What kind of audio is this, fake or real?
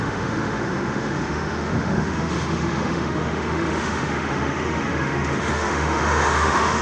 fake